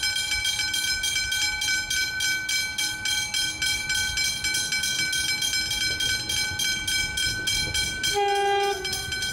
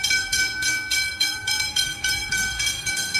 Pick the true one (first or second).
first